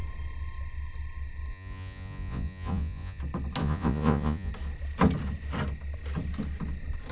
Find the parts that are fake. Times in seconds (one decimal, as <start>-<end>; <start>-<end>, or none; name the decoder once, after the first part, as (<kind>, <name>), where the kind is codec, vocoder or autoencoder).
1.5-3.2 (vocoder, Vocos); 3.6-4.5